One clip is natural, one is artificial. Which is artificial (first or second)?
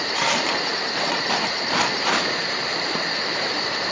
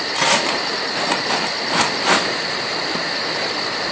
first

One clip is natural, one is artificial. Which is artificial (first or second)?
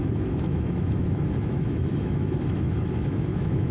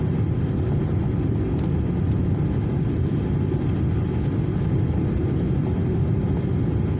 first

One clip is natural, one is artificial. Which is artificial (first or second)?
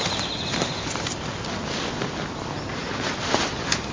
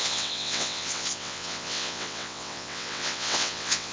second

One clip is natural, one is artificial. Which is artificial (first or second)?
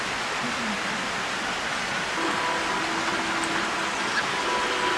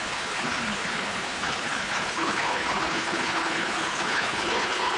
second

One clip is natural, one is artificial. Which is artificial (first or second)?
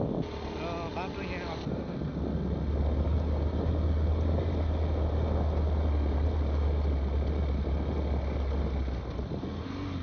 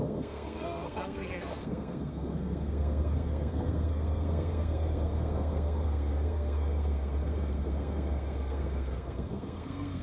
second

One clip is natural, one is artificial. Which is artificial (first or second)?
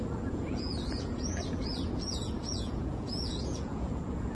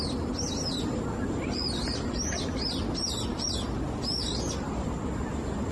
first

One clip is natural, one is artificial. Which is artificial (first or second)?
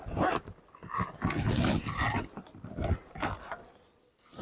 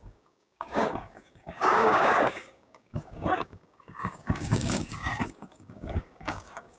second